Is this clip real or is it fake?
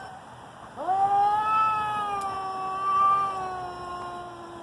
real